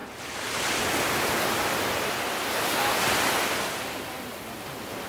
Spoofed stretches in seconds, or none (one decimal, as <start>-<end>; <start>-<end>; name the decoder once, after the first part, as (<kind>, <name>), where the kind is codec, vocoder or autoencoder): none